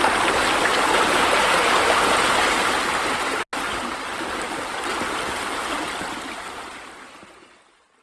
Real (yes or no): yes